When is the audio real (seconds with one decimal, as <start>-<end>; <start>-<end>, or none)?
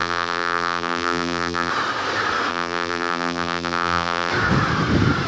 1.7-2.5; 4.3-5.3